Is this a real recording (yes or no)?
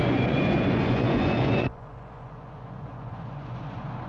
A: no